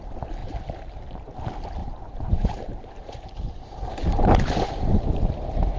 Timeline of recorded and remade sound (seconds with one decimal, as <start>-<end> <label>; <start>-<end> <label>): 0.0-0.4 recorded; 0.4-1.3 remade; 1.3-1.8 recorded; 1.8-5.3 remade; 5.3-5.8 recorded